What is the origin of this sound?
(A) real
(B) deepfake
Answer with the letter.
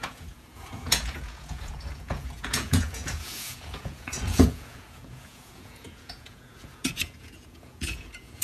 B